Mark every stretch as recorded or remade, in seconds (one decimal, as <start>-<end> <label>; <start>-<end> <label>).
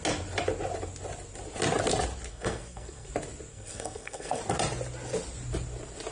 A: 0.0-2.3 recorded; 2.3-3.1 remade; 3.1-3.5 recorded; 3.5-4.4 remade; 4.4-6.1 recorded